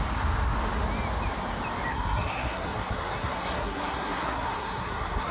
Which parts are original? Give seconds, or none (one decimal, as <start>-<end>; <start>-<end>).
0.0-1.9